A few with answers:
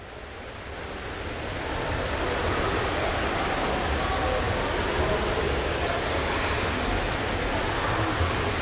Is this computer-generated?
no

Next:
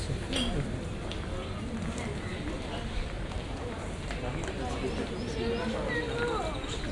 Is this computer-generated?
no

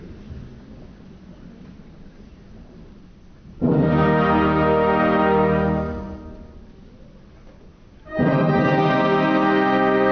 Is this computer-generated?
no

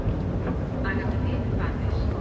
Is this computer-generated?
no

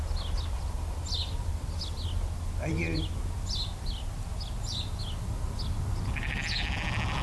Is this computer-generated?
no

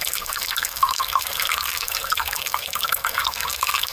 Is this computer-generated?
yes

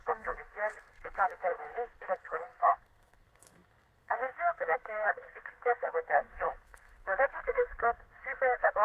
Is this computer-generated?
yes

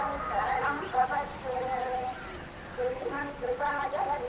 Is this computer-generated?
no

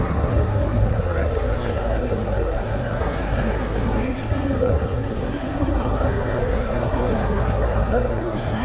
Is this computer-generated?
yes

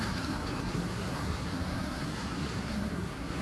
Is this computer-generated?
yes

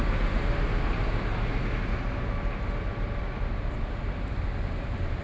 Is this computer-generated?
no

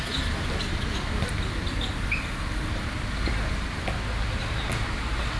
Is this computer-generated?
no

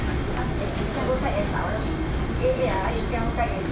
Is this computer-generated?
no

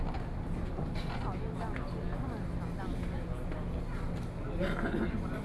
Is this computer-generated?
no